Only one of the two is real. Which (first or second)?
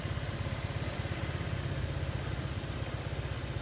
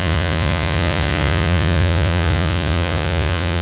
first